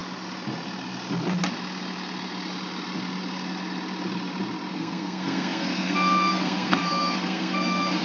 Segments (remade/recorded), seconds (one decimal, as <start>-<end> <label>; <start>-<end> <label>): 0.0-4.7 recorded; 4.7-8.0 remade